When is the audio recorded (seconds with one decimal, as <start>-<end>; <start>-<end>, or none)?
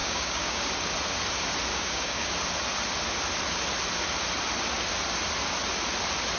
0.7-1.7; 2.3-6.4